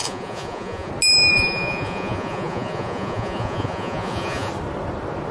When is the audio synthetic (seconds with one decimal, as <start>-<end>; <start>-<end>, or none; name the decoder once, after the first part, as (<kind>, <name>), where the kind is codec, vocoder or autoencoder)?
0.0-0.9 (vocoder, Vocos); 1.3-4.5